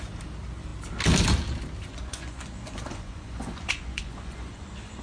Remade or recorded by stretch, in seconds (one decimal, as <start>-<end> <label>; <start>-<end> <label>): 0.0-1.9 recorded; 1.9-5.0 remade